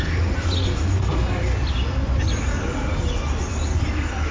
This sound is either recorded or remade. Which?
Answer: recorded